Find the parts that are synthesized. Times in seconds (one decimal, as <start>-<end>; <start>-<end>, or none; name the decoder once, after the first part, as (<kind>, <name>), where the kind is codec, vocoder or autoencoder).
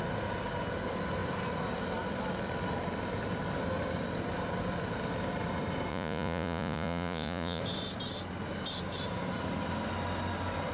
5.9-7.6 (vocoder, Vocos)